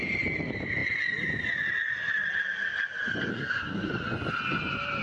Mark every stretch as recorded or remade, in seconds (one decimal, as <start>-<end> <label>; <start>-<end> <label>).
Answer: 0.0-3.3 recorded; 3.3-3.9 remade; 3.9-5.0 recorded